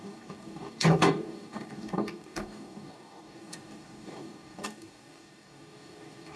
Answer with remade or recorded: remade